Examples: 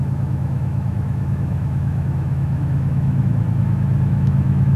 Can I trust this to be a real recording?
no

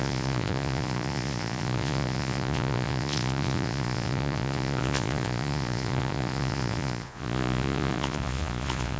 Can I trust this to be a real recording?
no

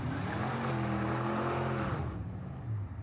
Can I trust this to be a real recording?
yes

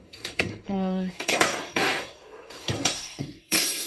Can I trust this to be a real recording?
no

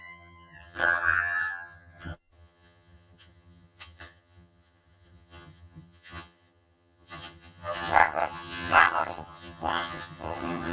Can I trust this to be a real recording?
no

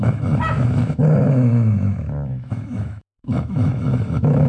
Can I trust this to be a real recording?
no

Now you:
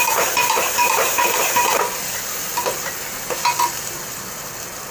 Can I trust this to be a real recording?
yes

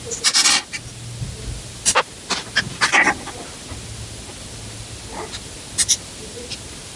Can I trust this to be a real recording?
yes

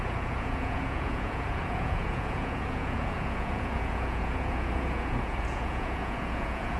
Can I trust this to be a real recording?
no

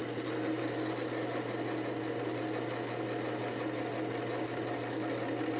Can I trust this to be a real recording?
yes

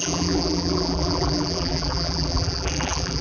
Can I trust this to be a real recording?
no